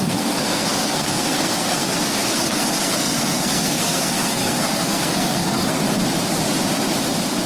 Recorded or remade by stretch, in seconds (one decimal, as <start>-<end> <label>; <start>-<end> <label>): 0.0-5.8 remade; 5.8-7.5 recorded